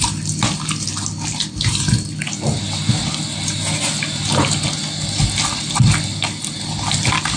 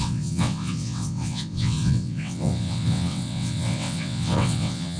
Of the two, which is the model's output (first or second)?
second